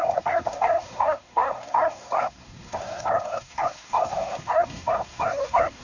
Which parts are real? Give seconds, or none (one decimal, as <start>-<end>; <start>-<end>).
none